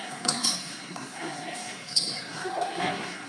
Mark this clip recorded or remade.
remade